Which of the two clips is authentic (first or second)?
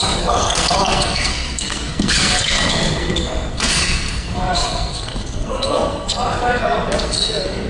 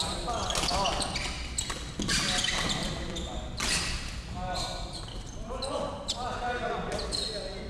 second